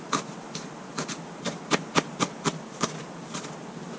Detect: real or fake real